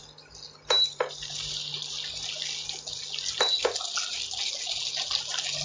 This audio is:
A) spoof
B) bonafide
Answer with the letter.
B